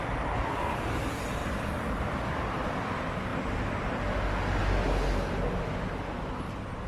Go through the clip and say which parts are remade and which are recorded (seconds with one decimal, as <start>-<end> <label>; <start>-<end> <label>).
0.0-6.9 recorded